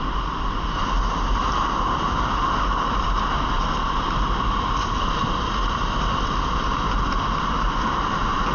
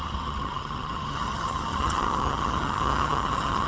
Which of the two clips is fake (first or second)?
second